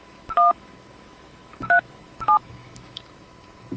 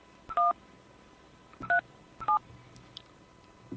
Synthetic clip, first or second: first